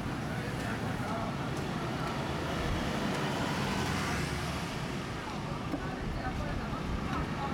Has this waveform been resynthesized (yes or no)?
yes